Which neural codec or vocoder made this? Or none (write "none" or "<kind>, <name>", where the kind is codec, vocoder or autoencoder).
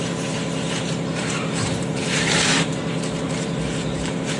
vocoder, BigVGAN v2